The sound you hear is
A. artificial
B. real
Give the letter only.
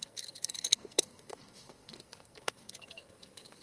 A